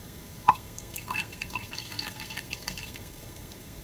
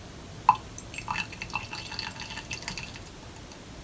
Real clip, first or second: second